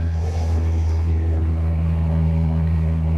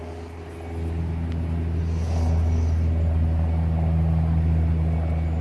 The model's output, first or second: first